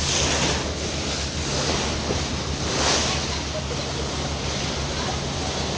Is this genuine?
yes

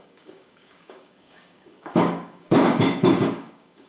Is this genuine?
no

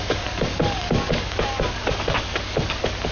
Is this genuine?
no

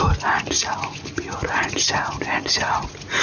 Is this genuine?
yes